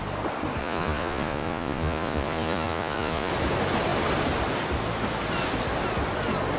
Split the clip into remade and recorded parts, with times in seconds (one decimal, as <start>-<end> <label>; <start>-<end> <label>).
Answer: 0.0-0.6 recorded; 0.6-3.3 remade; 3.3-6.6 recorded